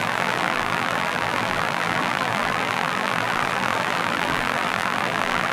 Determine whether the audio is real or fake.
fake